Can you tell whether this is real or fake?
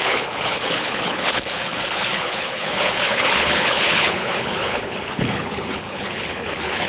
fake